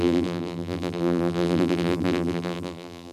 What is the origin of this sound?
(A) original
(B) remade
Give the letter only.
B